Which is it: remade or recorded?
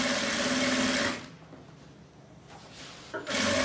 recorded